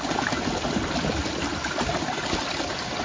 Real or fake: real